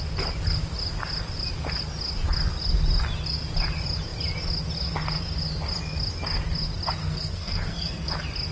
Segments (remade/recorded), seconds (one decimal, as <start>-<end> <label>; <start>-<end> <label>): 0.0-7.0 recorded; 7.0-8.1 remade; 8.1-8.5 recorded